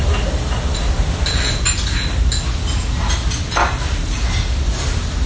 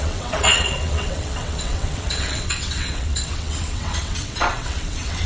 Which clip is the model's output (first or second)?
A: second